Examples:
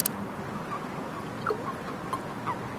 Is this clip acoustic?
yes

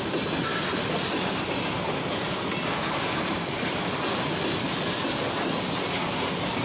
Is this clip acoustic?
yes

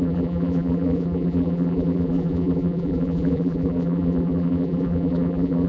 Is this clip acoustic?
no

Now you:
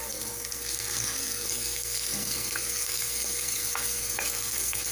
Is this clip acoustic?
no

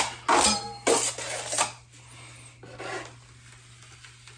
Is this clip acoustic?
yes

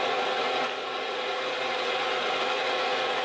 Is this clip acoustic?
no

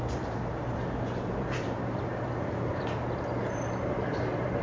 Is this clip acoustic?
no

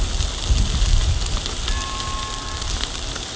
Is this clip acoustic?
yes